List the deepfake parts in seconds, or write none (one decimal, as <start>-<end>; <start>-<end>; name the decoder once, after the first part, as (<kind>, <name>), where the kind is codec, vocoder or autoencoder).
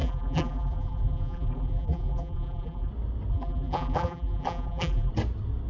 0.0-2.9 (vocoder, BigVGAN v2); 3.3-5.1